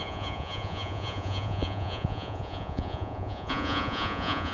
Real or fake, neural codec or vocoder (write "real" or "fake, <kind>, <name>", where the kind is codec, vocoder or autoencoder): fake, vocoder, Vocos